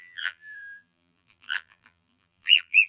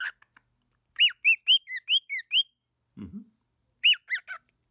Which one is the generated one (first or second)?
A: first